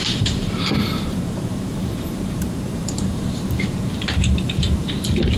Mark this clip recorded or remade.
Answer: remade